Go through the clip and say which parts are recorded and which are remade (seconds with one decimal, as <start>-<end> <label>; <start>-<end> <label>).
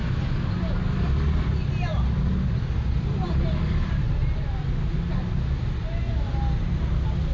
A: 0.0-7.3 recorded